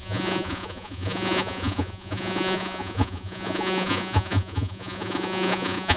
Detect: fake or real fake